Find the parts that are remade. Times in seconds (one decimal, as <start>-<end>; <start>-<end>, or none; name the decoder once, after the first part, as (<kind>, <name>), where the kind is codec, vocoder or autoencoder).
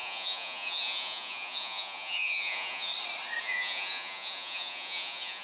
0.0-2.9 (vocoder, Vocos); 3.4-5.4